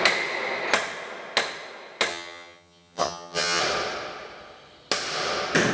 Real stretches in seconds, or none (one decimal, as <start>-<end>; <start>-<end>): 0.0-2.1; 3.6-5.7